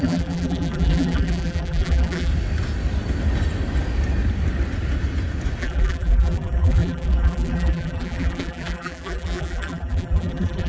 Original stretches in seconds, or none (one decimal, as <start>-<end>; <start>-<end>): 2.3-5.6